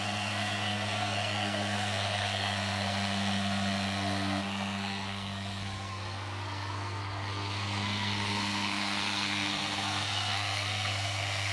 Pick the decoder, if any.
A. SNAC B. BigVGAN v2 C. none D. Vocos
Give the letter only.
A